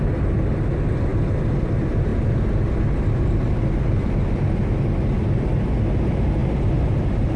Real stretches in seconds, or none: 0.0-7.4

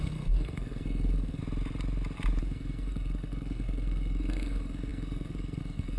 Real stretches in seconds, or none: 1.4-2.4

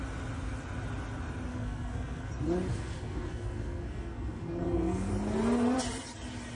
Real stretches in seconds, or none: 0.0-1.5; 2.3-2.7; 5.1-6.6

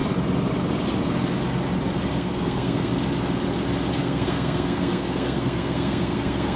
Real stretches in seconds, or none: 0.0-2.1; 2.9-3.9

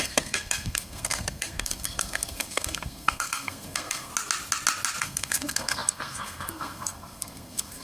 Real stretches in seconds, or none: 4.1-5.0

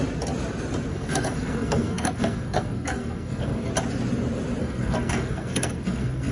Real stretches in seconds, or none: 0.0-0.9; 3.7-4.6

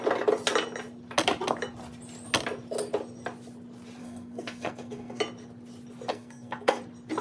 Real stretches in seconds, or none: 0.0-4.0; 5.2-6.1; 6.8-7.2